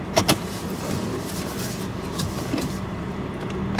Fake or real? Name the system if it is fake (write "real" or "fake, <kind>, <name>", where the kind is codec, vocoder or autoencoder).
real